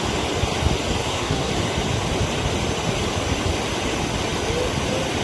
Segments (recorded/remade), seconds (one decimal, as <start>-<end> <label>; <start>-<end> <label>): 0.0-1.0 recorded; 1.0-1.5 remade; 1.5-5.2 recorded